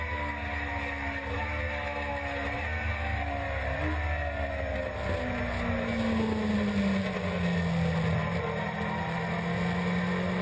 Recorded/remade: recorded